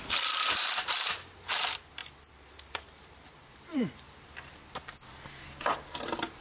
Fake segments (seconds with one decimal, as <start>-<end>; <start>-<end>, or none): 0.0-6.4